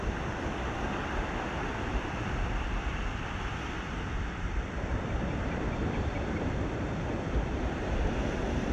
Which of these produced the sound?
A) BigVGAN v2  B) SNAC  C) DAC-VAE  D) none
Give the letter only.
A